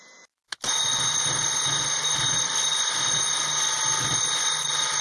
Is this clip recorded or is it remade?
recorded